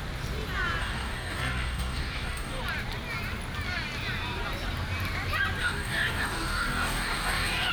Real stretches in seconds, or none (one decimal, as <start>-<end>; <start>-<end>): 0.0-0.8; 2.6-5.6